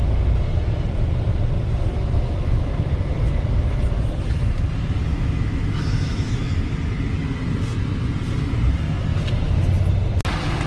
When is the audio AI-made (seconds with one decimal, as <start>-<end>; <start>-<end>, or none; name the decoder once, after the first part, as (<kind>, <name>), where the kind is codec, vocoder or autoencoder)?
1.9-2.9 (autoencoder, DAC-VAE); 5.1-6.7